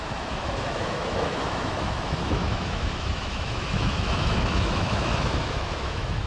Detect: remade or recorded remade